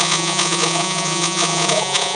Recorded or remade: remade